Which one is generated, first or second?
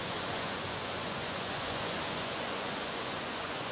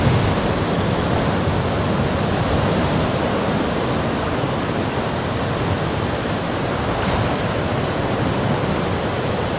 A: first